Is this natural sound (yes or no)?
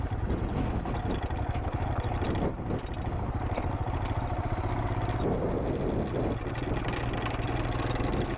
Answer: yes